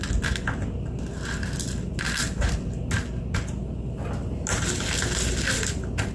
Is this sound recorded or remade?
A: recorded